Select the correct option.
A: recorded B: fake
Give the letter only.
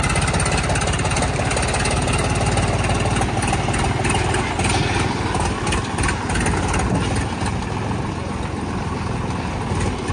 A